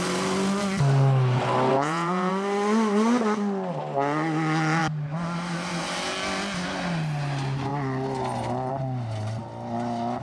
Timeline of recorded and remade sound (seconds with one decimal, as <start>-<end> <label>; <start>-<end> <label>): 0.0-1.7 recorded; 1.7-2.3 remade; 2.3-10.2 recorded